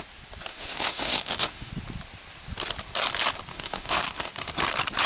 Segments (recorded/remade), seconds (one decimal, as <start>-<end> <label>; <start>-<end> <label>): 0.0-0.5 recorded; 0.5-1.7 remade; 1.7-3.5 recorded; 3.5-4.3 remade; 4.3-5.1 recorded